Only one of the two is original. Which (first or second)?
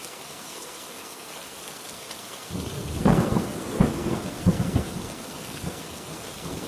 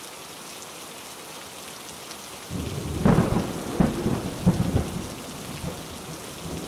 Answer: second